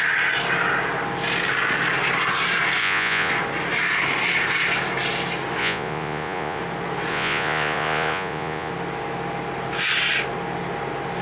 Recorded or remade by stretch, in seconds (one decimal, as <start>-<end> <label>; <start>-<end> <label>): 0.0-2.8 recorded; 2.8-3.3 remade; 3.3-5.6 recorded; 5.6-6.6 remade; 6.6-7.1 recorded; 7.1-8.7 remade; 8.7-11.2 recorded